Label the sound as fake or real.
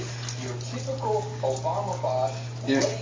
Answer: real